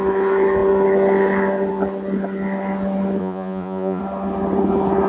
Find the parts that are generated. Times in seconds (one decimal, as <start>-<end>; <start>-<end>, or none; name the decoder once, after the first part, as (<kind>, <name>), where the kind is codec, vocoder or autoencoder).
3.2-4.0 (vocoder, Vocos)